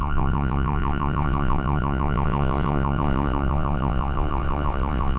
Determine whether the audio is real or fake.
fake